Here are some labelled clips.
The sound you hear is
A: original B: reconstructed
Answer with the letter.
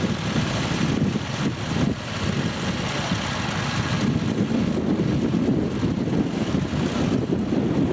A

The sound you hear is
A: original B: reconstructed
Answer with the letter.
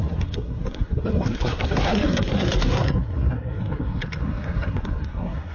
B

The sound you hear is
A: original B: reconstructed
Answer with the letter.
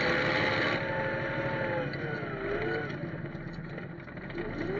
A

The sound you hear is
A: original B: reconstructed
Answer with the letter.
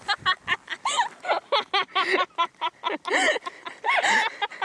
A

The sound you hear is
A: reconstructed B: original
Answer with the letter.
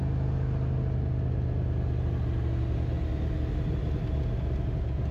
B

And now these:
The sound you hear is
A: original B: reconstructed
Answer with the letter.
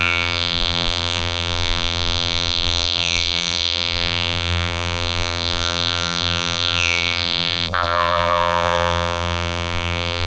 B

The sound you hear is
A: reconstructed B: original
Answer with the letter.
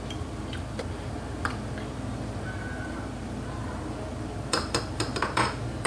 A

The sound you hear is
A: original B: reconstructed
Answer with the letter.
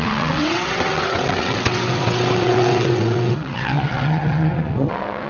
B